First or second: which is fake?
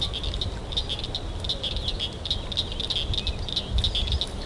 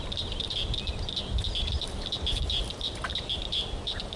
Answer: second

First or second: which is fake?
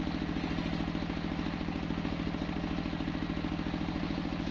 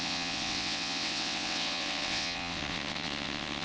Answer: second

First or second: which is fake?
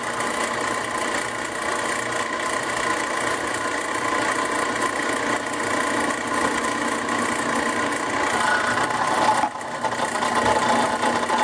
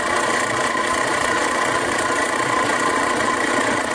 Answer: second